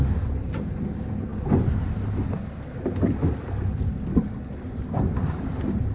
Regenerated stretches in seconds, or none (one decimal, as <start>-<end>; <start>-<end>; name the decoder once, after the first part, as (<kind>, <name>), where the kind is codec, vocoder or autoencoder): none